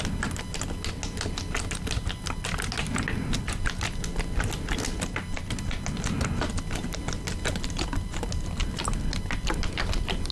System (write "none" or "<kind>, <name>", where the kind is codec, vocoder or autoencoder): none